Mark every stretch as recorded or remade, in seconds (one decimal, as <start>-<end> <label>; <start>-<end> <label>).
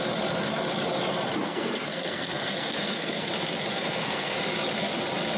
0.0-1.4 recorded; 1.4-3.3 remade; 3.3-3.7 recorded; 3.7-4.4 remade; 4.4-5.4 recorded